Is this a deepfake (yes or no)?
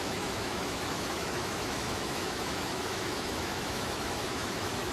yes